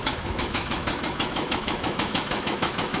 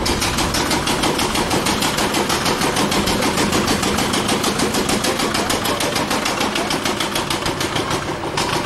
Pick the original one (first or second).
second